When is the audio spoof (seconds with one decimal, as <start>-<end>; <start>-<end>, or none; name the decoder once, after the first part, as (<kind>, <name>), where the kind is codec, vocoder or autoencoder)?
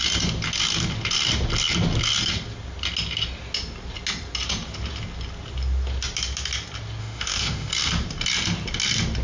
7.0-7.7 (autoencoder, DAC-VAE)